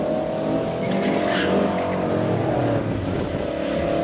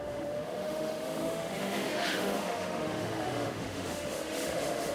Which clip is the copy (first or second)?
second